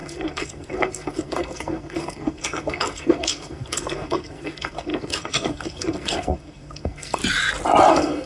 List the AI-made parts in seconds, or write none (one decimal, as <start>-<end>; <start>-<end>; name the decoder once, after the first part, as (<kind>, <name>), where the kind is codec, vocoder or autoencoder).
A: 0.0-7.2 (codec, SNAC); 7.9-8.3